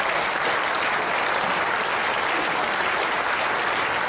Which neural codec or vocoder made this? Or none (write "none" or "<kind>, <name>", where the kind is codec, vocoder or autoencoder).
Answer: none